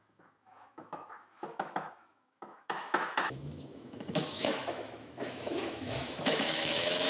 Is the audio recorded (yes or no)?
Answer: no